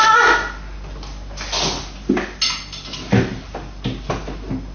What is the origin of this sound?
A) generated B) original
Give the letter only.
B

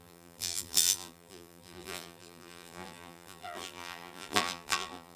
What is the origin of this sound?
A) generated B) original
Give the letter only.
A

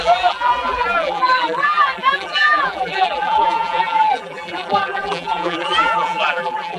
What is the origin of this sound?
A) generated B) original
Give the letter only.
A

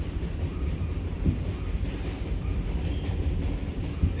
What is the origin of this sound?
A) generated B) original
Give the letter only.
A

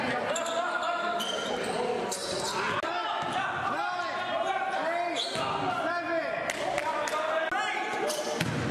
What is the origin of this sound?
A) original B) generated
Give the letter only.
A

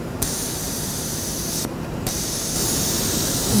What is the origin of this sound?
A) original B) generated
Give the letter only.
B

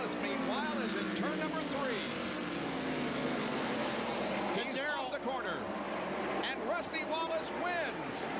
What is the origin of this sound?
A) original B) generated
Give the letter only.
A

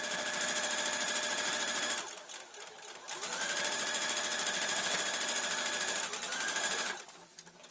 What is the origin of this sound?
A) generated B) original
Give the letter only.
B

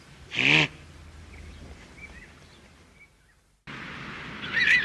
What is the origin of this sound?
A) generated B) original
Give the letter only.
B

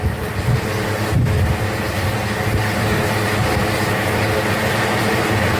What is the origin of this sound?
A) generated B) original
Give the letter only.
B